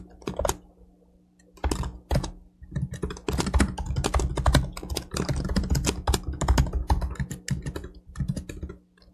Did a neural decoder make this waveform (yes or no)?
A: no